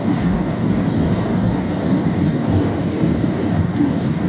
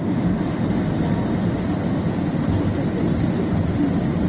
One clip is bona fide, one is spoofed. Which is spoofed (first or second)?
first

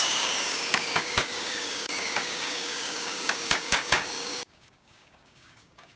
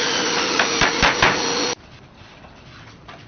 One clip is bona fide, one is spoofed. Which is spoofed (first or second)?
first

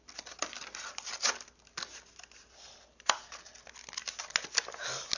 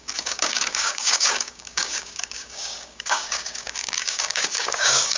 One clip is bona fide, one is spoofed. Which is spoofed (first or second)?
second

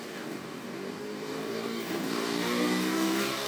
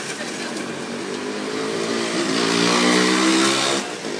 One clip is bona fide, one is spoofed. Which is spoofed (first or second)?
first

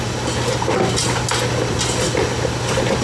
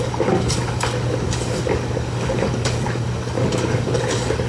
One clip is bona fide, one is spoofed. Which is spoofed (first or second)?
second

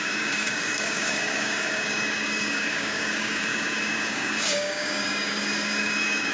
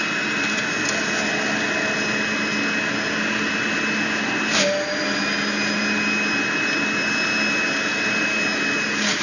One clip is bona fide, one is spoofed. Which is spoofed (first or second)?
first